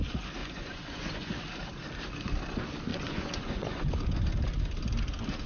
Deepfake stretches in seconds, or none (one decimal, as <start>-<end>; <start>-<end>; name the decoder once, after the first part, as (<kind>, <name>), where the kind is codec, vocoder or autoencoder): 0.4-1.3 (vocoder, Vocos); 2.9-3.9